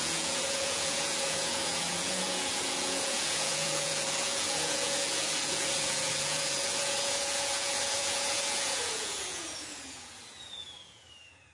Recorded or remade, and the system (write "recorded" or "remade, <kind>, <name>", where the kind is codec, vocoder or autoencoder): remade, vocoder, Vocos